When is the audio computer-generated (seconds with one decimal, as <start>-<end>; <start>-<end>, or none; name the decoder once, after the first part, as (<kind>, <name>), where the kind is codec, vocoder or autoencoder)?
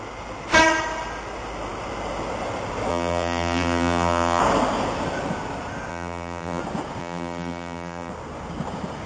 2.9-4.4 (vocoder, BigVGAN v2); 5.9-6.6; 7.0-8.1